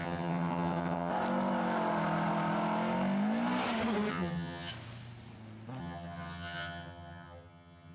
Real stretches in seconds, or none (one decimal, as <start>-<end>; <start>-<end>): 1.1-4.1; 4.7-5.8